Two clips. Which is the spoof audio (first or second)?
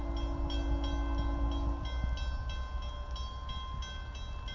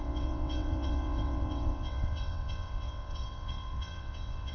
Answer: second